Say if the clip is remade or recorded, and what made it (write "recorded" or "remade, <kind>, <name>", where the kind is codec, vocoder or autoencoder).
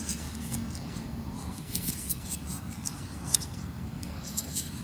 remade, codec, SNAC